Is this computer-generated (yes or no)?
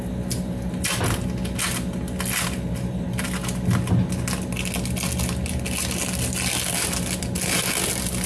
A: no